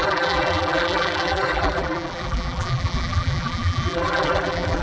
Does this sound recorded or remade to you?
remade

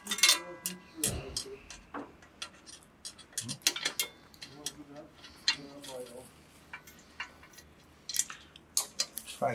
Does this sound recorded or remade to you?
recorded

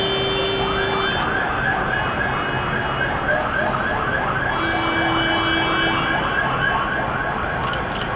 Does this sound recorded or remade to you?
recorded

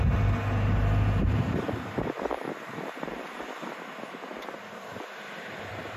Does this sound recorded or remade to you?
recorded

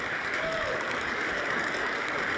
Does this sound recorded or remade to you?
remade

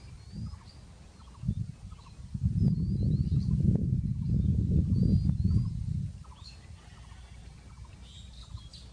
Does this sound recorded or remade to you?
recorded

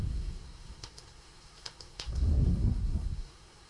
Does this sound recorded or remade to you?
remade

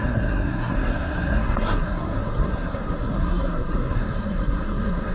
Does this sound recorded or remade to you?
remade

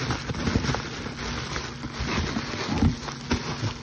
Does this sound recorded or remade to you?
recorded